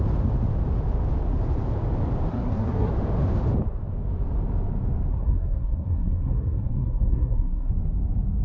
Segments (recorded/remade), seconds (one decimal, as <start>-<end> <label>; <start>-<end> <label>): 0.0-2.3 recorded; 2.3-2.9 remade; 2.9-5.1 recorded; 5.1-7.7 remade; 7.7-8.4 recorded

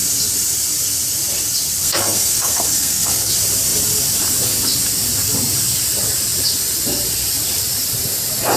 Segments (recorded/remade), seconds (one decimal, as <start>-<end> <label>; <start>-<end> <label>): 0.0-1.8 recorded; 1.8-3.3 remade; 3.3-8.6 recorded

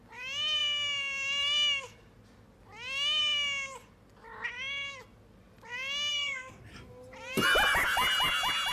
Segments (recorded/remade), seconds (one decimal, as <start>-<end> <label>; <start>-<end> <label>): 0.0-6.1 recorded; 6.1-6.6 remade; 6.6-8.7 recorded

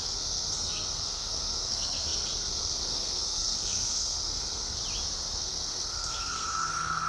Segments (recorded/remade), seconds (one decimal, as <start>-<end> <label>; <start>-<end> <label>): 0.0-4.8 remade; 4.8-5.4 recorded; 5.4-7.1 remade

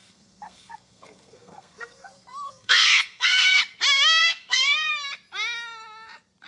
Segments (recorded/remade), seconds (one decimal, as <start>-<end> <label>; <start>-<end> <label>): 0.0-3.6 remade; 3.6-4.2 recorded; 4.2-4.9 remade; 4.9-6.5 recorded

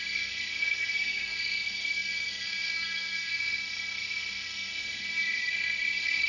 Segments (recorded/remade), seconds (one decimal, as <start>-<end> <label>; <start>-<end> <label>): 0.0-6.3 remade

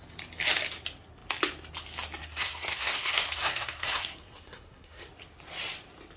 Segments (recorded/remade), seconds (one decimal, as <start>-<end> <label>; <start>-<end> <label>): 0.0-2.2 recorded; 2.2-5.1 remade; 5.1-6.2 recorded